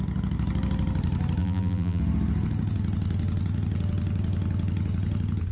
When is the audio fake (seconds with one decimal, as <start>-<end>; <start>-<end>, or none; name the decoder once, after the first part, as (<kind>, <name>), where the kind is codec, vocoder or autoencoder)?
1.4-2.0 (vocoder, BigVGAN v2)